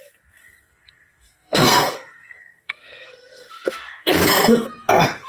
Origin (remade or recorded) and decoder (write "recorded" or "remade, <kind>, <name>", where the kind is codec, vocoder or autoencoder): remade, codec, SNAC